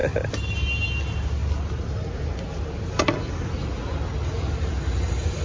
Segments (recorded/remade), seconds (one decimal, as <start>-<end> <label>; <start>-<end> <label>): 0.0-5.4 recorded